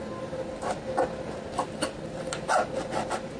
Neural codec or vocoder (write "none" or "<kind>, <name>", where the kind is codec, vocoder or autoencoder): none